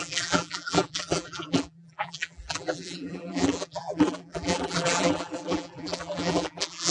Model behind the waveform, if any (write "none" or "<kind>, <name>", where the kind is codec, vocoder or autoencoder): vocoder, BigVGAN v2